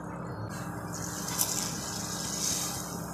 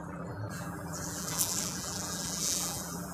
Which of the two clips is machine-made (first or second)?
second